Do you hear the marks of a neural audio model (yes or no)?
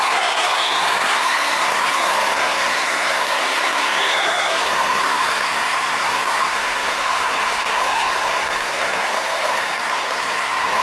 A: yes